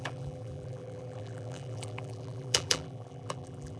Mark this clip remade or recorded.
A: remade